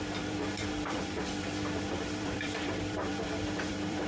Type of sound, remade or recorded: remade